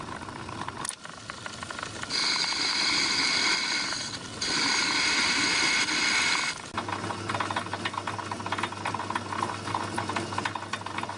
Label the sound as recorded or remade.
recorded